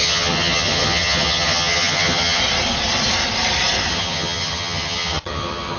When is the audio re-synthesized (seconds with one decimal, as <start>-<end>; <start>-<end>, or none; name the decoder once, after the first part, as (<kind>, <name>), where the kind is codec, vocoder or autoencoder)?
0.0-2.4 (vocoder, HiFi-GAN); 3.9-5.8